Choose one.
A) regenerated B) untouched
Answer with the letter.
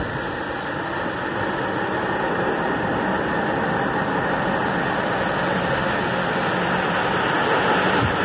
B